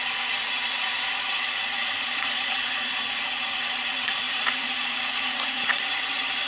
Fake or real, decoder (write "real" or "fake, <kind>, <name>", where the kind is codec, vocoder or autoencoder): fake, vocoder, Vocos